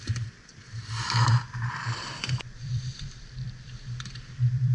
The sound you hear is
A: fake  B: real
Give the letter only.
A